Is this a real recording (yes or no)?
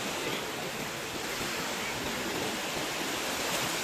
yes